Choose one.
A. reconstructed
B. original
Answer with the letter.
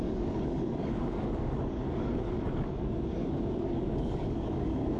A